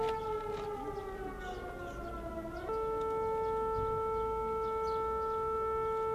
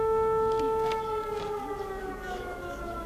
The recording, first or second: first